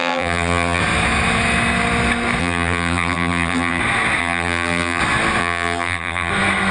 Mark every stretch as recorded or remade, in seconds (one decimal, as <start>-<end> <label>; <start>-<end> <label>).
0.0-0.8 remade; 0.8-2.4 recorded; 2.4-3.8 remade; 3.8-4.2 recorded; 4.2-5.0 remade; 5.0-5.4 recorded; 5.4-6.3 remade; 6.3-6.7 recorded